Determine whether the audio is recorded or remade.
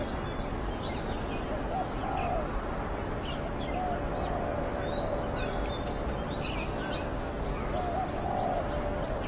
recorded